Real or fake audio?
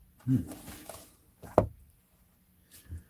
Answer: real